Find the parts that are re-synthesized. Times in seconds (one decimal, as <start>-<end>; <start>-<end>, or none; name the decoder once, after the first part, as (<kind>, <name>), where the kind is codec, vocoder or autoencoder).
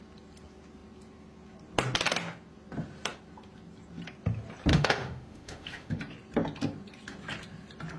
4.7-6.0 (autoencoder, DAC-VAE)